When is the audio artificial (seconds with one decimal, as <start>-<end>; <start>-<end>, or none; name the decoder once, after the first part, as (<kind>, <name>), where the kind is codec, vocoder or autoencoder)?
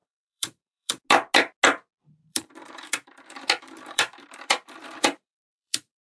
0.0-1.0 (vocoder, BigVGAN v2); 2.3-6.1